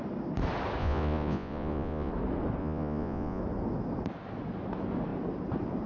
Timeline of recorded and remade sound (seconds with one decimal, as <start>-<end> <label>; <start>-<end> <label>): 0.0-0.8 recorded; 0.8-2.1 remade; 2.1-2.6 recorded; 2.6-3.4 remade; 3.4-5.9 recorded